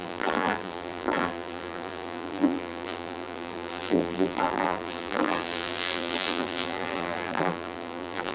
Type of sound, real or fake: fake